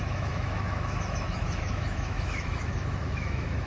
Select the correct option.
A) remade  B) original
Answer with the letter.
A